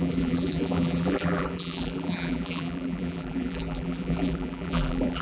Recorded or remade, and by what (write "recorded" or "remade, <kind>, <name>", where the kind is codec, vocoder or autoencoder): remade, vocoder, BigVGAN v2